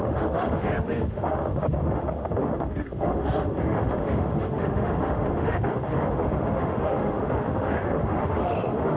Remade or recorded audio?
remade